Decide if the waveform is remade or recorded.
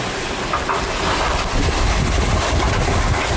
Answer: recorded